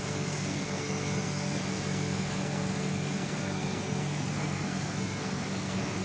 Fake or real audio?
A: fake